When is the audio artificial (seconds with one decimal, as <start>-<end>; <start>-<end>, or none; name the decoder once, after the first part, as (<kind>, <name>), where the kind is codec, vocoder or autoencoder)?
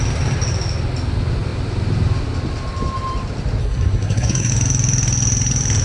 3.6-4.5 (codec, SNAC)